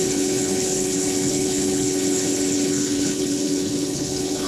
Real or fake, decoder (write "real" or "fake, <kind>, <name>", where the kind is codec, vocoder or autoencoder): fake, codec, HILCodec